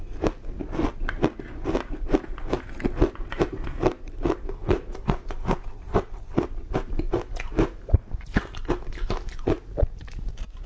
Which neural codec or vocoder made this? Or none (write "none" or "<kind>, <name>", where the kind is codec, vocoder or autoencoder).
none